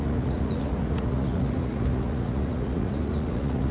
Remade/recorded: remade